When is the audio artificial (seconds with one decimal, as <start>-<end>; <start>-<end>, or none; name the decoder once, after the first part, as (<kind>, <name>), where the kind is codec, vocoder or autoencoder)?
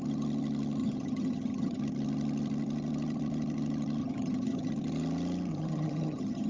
0.8-1.8 (vocoder, HiFi-GAN); 4.0-4.7; 5.5-6.5